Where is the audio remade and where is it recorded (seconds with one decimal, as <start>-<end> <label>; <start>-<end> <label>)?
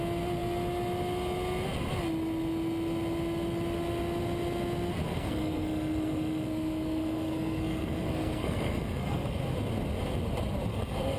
0.0-5.1 recorded; 5.1-9.4 remade; 9.4-10.7 recorded; 10.7-11.2 remade